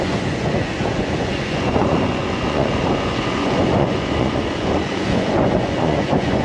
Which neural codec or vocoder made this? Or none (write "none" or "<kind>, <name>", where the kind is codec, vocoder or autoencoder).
vocoder, Vocos